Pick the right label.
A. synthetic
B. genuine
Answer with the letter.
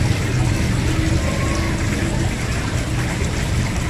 B